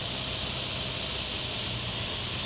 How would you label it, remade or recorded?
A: recorded